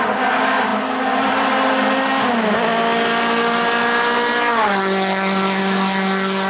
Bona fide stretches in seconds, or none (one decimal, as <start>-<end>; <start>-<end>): 0.0-6.5